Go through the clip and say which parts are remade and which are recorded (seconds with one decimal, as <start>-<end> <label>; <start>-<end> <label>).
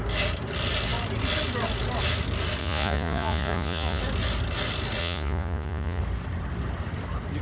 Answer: 0.0-2.6 recorded; 2.6-4.0 remade; 4.0-5.0 recorded; 5.0-6.0 remade; 6.0-7.4 recorded